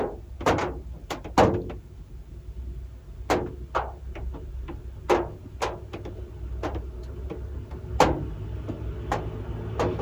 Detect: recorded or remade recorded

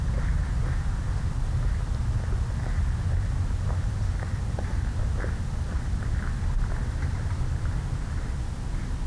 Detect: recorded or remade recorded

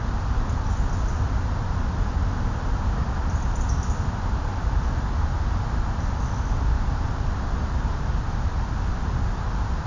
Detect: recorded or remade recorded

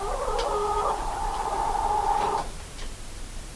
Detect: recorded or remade remade